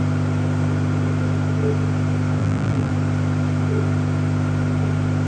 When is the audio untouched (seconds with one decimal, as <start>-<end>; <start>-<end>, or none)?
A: 0.0-2.4; 2.9-5.3